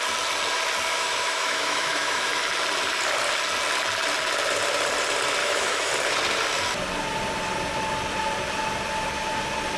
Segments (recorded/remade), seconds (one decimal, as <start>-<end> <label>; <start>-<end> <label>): 0.0-0.9 recorded; 0.9-2.3 remade; 2.3-5.4 recorded; 5.4-5.9 remade; 5.9-9.8 recorded